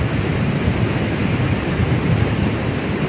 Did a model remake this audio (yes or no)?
yes